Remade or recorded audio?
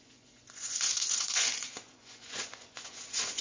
remade